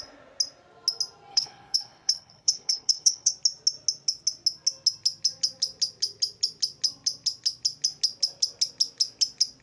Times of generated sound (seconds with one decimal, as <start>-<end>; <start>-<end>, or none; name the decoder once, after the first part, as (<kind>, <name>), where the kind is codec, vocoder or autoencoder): 1.3-3.3 (codec, HILCodec)